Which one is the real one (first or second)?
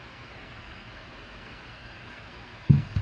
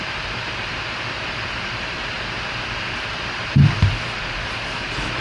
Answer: second